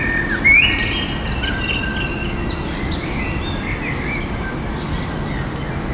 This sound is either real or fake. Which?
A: real